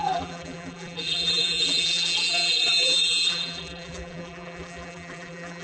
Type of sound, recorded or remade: remade